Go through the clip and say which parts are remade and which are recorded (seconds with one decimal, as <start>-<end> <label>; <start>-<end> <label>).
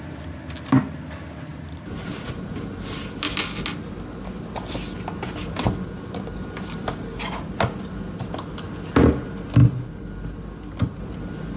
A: 0.0-1.5 recorded; 1.5-3.0 remade; 3.0-11.6 recorded